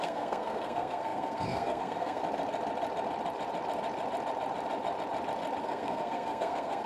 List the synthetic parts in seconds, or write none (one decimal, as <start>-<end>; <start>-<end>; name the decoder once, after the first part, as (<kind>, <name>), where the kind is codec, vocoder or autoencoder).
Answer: 0.0-2.2 (codec, SNAC); 5.6-6.9